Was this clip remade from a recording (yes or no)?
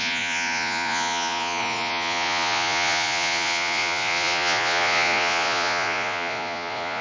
yes